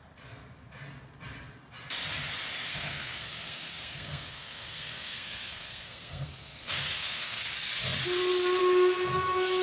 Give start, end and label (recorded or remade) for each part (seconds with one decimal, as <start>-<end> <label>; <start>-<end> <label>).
0.0-2.7 recorded; 2.7-7.5 remade; 7.5-9.6 recorded